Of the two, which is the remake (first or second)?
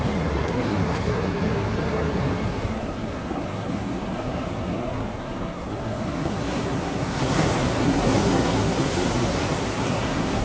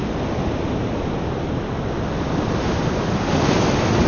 first